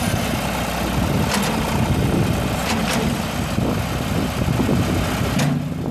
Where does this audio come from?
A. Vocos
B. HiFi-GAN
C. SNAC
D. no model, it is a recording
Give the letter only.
D